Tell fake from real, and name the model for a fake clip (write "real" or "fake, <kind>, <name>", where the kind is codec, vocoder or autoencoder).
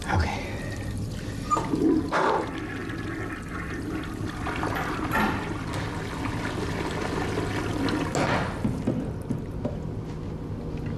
real